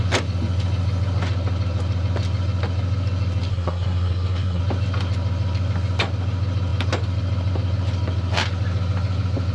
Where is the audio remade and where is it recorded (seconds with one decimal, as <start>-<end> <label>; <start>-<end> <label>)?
0.0-3.5 recorded; 3.5-4.6 remade; 4.6-9.5 recorded